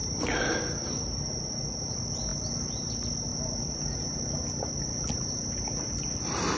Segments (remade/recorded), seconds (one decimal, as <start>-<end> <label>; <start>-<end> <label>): 0.0-1.3 remade; 1.3-2.3 recorded; 2.3-2.9 remade; 2.9-3.3 recorded; 3.3-6.6 remade